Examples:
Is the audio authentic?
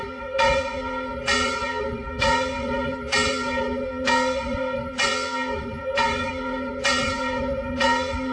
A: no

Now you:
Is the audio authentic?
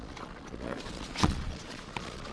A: no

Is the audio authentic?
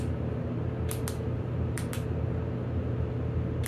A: yes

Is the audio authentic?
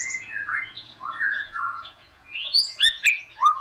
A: no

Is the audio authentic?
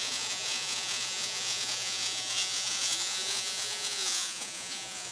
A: no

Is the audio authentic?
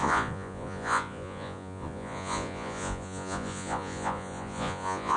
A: no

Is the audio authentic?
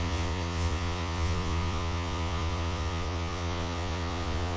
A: no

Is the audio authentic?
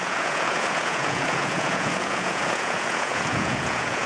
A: no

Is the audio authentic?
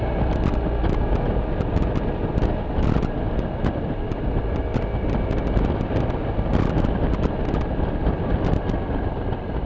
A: yes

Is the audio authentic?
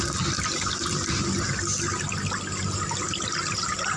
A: yes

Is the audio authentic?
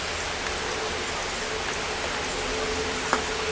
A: yes